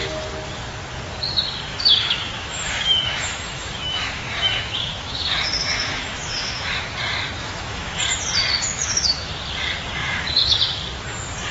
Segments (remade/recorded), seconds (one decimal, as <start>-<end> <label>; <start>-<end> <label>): 0.0-1.7 recorded; 1.7-6.9 remade; 6.9-7.4 recorded; 7.4-8.0 remade; 8.0-8.7 recorded; 8.7-9.3 remade; 9.3-10.0 recorded; 10.0-10.6 remade; 10.6-11.5 recorded